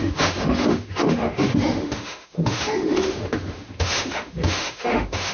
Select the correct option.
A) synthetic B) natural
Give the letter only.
A